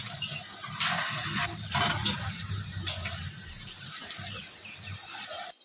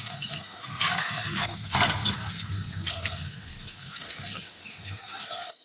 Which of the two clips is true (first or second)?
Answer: first